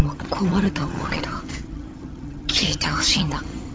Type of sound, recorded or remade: remade